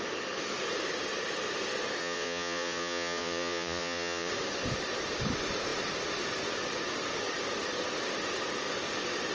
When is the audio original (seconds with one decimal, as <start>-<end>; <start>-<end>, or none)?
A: 0.0-2.0; 4.3-9.3